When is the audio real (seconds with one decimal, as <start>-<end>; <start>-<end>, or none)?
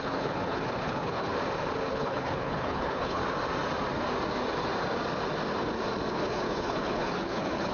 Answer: 1.3-1.9; 3.2-6.1